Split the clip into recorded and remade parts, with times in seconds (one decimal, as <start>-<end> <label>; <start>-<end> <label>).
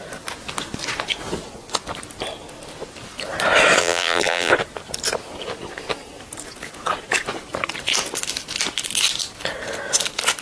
0.0-3.8 recorded; 3.8-4.5 remade; 4.5-10.4 recorded